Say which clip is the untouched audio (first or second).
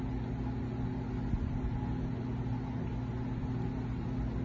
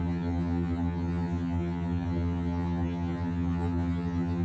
first